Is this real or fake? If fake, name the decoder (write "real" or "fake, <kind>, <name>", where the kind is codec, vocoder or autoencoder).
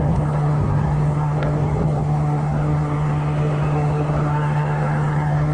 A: fake, codec, SNAC